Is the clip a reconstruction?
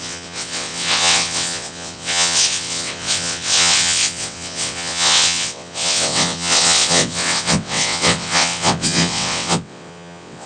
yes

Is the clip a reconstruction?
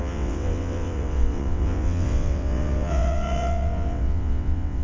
yes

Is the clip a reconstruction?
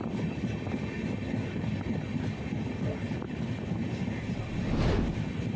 no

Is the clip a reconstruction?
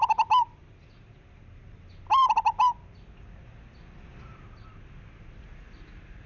no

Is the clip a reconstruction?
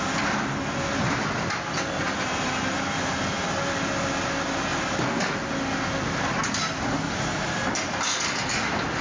no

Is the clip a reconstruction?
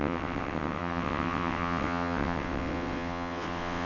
yes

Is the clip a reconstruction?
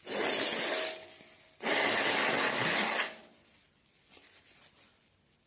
no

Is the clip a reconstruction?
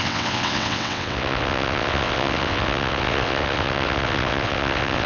yes